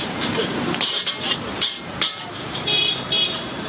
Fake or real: fake